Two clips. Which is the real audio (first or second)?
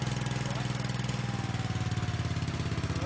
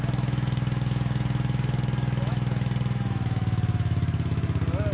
first